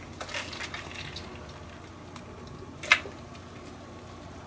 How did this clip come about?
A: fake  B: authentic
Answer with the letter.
B